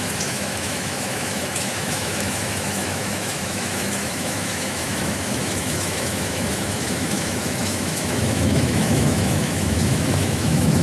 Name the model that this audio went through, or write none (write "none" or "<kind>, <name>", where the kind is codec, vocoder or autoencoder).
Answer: autoencoder, DAC-VAE